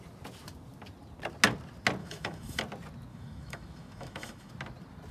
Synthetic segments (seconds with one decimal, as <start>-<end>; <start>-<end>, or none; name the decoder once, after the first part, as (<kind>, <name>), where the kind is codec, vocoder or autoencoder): 2.0-2.6 (autoencoder, DAC-VAE); 3.1-4.5